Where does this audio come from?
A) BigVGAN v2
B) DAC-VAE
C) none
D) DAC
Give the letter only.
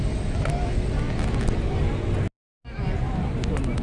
C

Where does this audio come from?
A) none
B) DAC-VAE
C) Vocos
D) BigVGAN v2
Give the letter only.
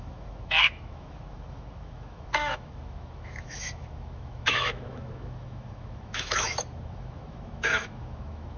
B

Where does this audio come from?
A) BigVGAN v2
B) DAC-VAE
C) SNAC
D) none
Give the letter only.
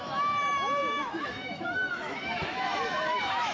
B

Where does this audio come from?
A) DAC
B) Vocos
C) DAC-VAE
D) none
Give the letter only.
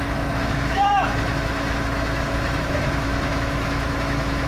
C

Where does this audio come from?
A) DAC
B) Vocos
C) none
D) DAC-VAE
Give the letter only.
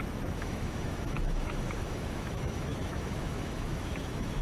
D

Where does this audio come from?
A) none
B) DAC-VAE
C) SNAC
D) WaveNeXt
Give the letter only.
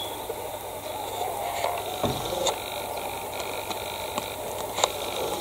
A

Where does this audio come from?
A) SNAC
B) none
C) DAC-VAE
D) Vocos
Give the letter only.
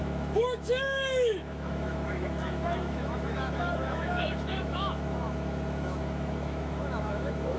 C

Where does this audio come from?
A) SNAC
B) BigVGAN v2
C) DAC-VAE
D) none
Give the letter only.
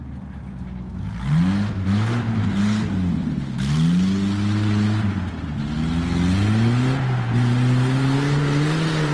D